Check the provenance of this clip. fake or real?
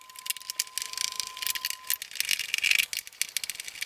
real